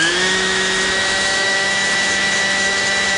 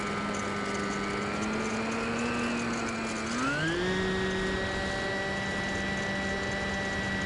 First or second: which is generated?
first